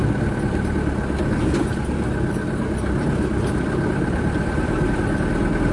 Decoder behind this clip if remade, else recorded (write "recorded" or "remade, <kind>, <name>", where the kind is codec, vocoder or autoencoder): recorded